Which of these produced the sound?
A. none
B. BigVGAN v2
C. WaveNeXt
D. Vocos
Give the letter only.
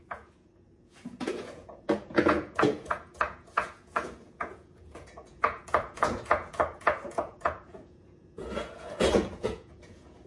D